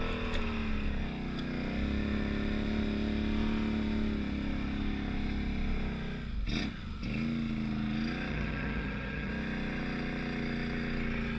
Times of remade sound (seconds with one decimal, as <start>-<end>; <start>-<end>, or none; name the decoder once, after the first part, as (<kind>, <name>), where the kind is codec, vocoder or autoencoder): 8.3-9.3 (vocoder, HiFi-GAN)